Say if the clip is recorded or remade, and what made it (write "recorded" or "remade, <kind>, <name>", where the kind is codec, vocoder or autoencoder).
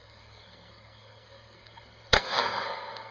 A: remade, codec, SNAC